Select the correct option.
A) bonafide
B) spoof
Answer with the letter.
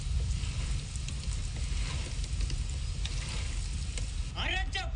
A